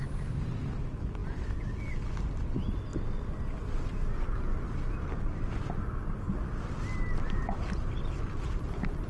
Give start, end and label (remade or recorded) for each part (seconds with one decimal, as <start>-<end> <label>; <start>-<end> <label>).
0.0-9.1 recorded